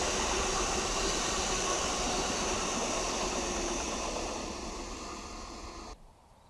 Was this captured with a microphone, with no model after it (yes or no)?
yes